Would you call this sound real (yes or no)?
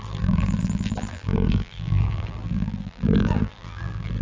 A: no